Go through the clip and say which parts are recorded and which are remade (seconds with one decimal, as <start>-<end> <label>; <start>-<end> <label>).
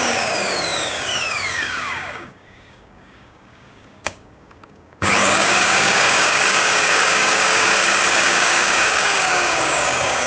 0.0-10.3 remade